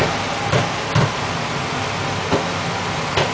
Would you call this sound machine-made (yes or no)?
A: no